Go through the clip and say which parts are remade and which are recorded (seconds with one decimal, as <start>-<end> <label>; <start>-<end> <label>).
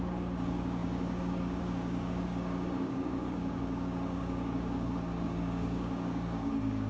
0.0-6.9 remade